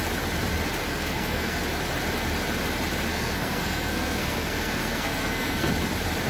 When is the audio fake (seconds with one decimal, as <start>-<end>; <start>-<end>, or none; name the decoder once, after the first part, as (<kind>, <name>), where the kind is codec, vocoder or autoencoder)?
0.8-1.6 (codec, SNAC); 3.1-5.7

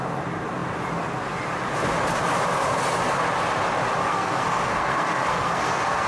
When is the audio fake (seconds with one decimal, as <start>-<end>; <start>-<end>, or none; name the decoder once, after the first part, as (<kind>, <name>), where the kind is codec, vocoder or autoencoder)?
4.0-6.1 (codec, SNAC)

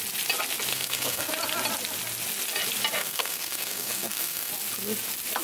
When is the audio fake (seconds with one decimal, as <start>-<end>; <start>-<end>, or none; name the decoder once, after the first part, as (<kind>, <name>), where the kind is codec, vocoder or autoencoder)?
0.7-1.3 (codec, SNAC); 3.0-4.5

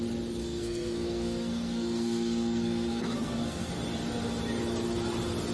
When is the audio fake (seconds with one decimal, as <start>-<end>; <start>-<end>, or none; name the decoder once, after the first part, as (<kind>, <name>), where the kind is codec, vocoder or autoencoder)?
0.4-3.7 (codec, SNAC)

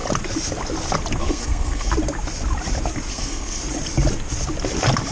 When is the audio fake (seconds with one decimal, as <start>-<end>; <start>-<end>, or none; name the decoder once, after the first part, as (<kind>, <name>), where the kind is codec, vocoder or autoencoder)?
1.2-1.9 (codec, SNAC); 3.1-3.6

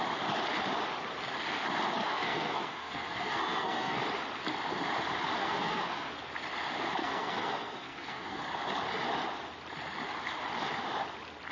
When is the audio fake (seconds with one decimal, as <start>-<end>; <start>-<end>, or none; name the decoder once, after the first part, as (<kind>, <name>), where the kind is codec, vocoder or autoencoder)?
2.0-4.0 (codec, SNAC); 5.4-6.1; 7.0-8.4